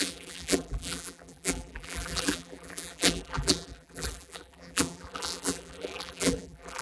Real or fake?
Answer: fake